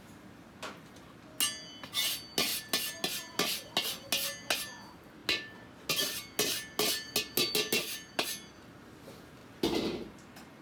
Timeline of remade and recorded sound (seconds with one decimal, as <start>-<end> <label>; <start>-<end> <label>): 0.0-10.6 recorded